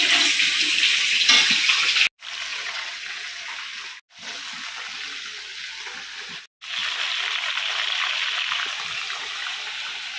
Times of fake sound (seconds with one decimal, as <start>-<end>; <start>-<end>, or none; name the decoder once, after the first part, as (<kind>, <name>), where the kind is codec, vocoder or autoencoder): 2.5-3.4 (vocoder, WaveNeXt)